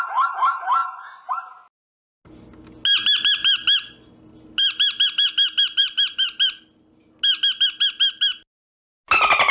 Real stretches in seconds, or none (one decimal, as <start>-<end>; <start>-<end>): 0.0-5.8; 6.6-9.5